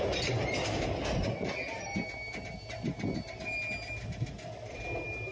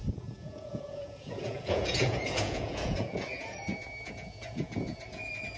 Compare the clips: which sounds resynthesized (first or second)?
second